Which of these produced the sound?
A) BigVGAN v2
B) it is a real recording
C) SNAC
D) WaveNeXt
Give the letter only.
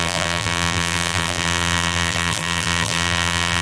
A